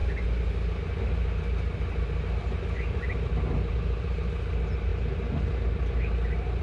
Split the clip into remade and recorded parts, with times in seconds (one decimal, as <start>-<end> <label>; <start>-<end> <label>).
0.0-6.6 recorded